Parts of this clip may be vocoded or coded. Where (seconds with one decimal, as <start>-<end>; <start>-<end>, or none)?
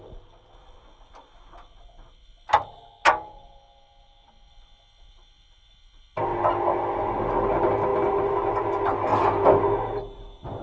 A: none